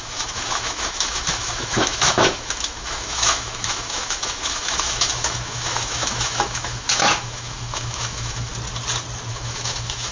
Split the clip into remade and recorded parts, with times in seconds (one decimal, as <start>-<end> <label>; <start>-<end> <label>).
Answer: 0.0-8.5 remade; 8.5-9.3 recorded; 9.3-10.1 remade